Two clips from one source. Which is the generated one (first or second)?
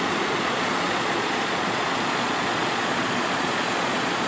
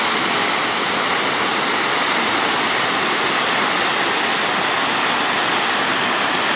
first